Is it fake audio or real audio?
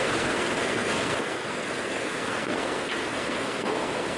fake